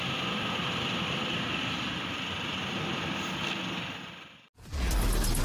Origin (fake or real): real